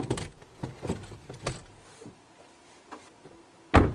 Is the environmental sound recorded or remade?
recorded